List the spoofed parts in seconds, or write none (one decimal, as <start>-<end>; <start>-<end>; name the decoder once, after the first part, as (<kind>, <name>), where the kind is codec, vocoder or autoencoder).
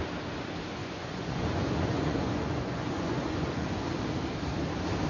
0.8-3.9 (vocoder, Vocos)